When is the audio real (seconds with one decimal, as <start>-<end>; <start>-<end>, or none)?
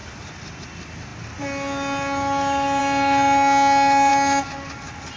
0.0-5.2